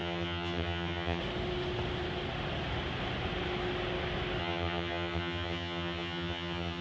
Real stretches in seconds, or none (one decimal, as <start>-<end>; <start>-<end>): 1.2-4.4

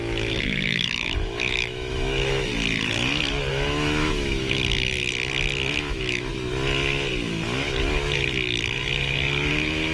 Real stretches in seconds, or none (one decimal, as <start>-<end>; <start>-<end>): 2.5-3.5; 4.6-5.7; 6.3-9.5

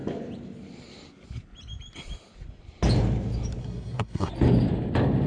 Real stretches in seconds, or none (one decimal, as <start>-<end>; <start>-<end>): 0.0-3.6; 4.3-5.3